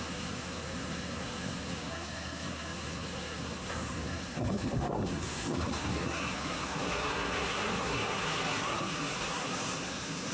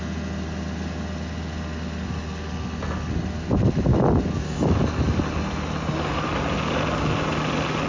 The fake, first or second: first